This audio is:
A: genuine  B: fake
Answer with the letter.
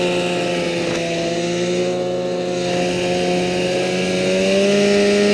A